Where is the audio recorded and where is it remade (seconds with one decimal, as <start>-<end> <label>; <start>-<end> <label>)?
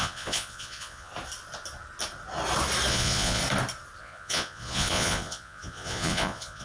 0.0-1.1 remade; 1.1-2.9 recorded; 2.9-3.4 remade; 3.4-4.0 recorded; 4.0-6.6 remade